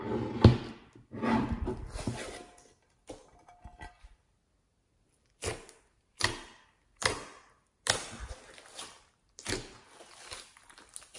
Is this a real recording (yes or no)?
yes